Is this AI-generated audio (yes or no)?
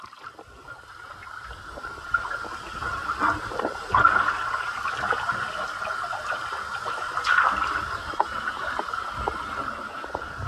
no